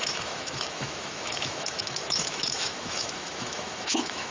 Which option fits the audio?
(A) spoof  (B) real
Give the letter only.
A